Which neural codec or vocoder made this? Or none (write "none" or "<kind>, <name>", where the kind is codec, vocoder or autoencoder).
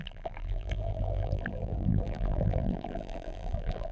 vocoder, BigVGAN v2